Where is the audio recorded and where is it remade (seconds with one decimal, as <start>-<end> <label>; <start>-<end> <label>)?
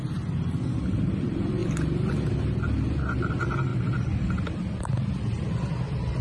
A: 0.0-1.6 remade; 1.6-2.1 recorded; 2.1-6.2 remade